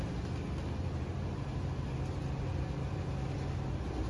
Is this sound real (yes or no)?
yes